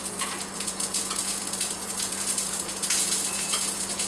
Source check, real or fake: fake